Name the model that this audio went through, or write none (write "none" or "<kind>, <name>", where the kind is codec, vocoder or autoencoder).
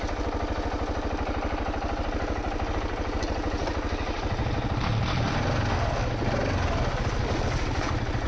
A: none